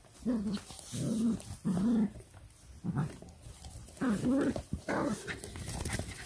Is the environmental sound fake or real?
real